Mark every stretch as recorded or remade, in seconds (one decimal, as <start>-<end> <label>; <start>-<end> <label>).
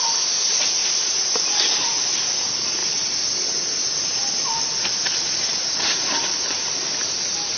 0.0-0.8 recorded; 0.8-1.5 remade; 1.5-7.6 recorded